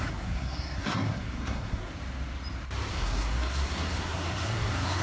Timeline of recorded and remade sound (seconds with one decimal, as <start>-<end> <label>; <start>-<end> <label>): 0.0-1.9 remade; 1.9-2.9 recorded; 2.9-5.0 remade